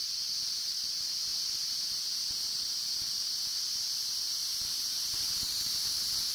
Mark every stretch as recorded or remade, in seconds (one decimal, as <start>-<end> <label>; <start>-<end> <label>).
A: 0.0-6.3 recorded